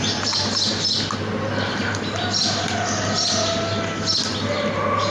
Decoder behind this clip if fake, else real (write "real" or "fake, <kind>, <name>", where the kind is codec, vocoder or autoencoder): real